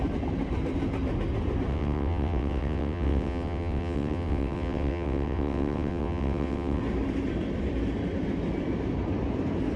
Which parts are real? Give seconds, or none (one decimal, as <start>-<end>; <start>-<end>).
0.0-1.7; 6.8-9.8